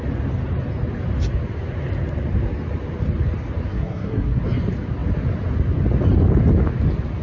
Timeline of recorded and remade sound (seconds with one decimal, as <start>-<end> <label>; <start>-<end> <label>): 0.0-3.7 recorded; 3.7-4.4 remade; 4.4-7.2 recorded